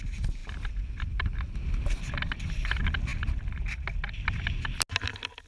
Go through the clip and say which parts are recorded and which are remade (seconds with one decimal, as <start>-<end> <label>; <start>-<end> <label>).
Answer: 0.0-5.5 recorded